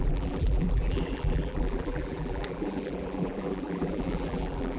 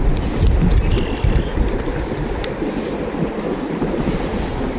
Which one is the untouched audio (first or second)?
second